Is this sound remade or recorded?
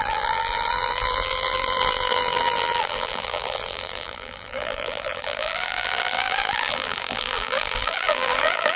remade